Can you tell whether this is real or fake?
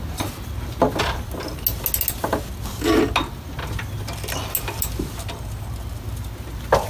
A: real